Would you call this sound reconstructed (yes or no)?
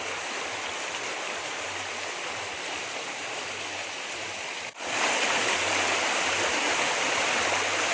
no